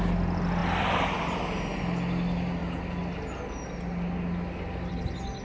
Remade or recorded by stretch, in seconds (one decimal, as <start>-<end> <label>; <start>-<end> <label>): 0.0-5.4 recorded